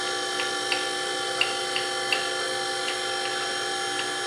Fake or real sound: real